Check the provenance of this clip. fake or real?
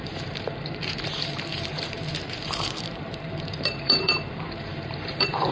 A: fake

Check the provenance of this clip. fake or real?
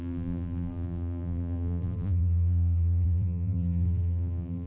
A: fake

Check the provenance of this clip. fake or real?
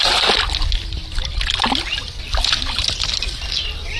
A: real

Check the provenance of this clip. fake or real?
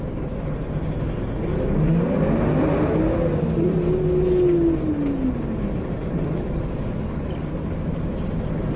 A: real